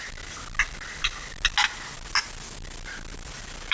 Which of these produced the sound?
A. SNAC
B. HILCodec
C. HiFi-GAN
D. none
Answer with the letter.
D